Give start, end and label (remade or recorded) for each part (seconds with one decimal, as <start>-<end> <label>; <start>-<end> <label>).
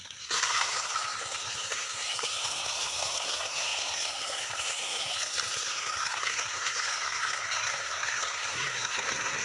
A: 0.0-9.4 remade